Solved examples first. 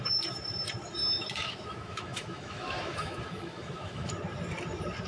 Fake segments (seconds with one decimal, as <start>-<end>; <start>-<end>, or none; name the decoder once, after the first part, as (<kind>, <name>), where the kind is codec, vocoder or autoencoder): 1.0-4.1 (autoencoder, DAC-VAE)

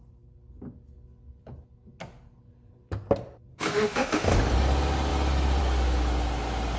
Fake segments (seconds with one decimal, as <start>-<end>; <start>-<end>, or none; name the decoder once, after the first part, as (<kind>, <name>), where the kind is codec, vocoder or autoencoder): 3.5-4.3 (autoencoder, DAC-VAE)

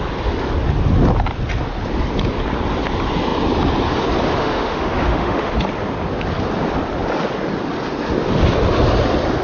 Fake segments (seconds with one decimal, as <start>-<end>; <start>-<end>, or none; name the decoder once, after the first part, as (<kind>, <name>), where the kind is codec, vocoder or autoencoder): 4.4-5.5 (autoencoder, DAC-VAE)

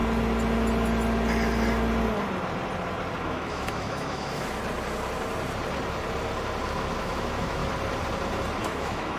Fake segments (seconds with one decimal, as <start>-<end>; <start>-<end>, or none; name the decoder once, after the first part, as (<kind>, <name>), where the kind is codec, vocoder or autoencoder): 3.2-4.6 (autoencoder, DAC-VAE); 7.0-7.6; 8.6-9.2